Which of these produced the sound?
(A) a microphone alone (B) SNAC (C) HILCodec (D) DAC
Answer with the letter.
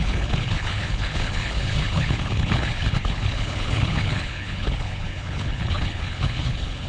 C